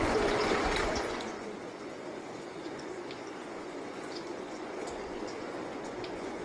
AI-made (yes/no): yes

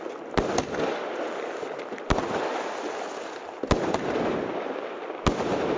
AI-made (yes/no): no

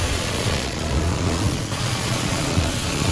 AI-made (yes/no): yes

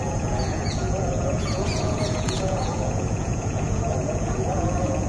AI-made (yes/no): yes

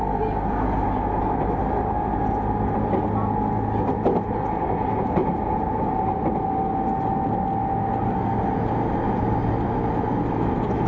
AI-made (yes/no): no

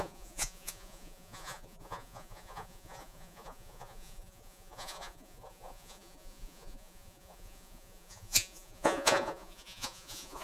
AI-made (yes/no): yes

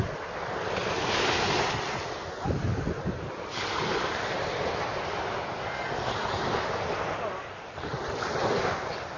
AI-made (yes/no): no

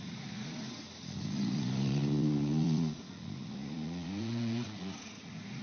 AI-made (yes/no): yes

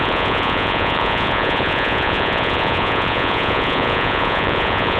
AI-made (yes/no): yes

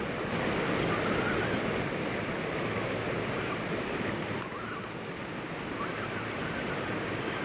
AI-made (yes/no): no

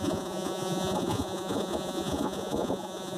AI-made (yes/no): yes